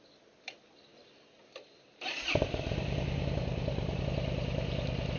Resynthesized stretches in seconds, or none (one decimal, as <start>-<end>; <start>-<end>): 0.9-4.0